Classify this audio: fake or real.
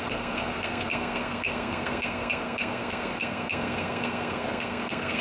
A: fake